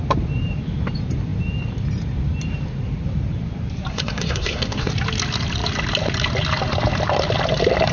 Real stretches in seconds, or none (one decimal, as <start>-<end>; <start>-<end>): 0.0-3.9; 4.9-7.9

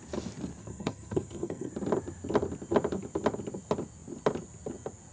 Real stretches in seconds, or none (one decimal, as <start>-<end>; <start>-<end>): 0.0-0.6; 1.7-5.1

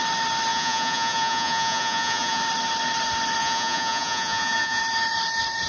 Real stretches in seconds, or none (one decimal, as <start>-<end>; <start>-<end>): 0.0-0.5; 2.4-3.4; 4.8-5.7

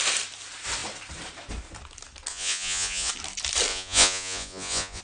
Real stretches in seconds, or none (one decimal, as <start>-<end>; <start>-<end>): 0.0-2.3; 3.1-3.7

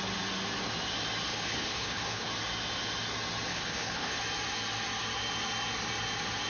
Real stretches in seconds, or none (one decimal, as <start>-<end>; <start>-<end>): 0.0-1.3; 2.3-3.5; 4.2-6.5

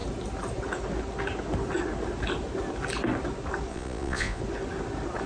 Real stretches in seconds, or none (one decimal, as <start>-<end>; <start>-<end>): 0.0-3.7; 4.4-5.3